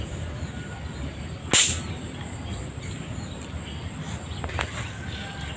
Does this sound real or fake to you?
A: real